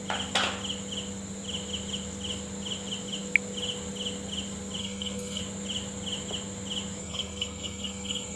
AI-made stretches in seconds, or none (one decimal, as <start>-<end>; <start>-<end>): 4.8-5.4; 7.0-8.4